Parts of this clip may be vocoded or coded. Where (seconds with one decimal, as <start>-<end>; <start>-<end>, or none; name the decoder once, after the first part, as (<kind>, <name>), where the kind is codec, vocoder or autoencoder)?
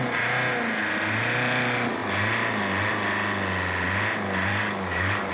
4.5-5.3 (codec, DAC)